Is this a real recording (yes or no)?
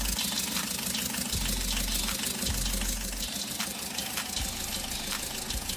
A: yes